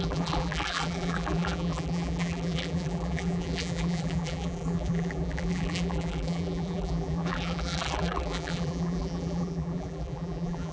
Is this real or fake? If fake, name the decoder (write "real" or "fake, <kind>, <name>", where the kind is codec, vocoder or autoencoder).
fake, vocoder, BigVGAN v2